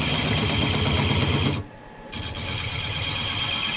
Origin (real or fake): real